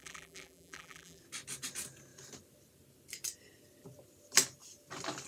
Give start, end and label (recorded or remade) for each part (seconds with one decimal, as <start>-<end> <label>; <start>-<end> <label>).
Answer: 0.0-1.2 remade; 1.2-5.3 recorded